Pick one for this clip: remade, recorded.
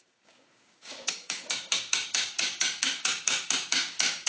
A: remade